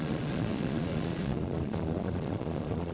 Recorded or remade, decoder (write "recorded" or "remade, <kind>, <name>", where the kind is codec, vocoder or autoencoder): remade, vocoder, Vocos